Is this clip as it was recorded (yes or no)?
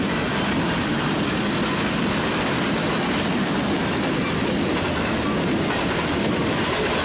yes